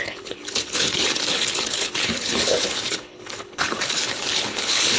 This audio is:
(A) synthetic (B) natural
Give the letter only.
A